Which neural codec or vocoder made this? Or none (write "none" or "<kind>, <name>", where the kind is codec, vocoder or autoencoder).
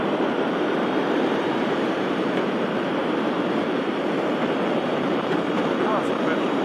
vocoder, BigVGAN v2